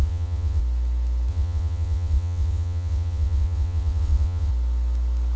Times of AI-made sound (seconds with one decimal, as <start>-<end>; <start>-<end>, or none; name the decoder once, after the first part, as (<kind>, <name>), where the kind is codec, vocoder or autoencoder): 0.0-0.6 (vocoder, WaveNeXt); 1.3-4.5